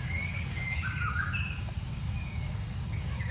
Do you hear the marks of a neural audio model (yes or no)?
yes